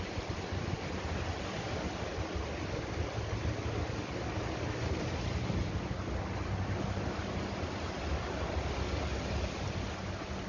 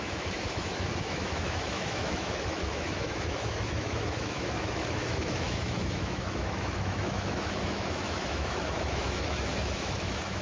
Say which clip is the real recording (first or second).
first